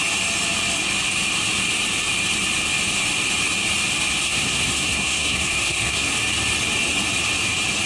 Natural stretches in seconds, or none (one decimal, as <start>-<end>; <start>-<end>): 0.0-4.2; 6.1-7.9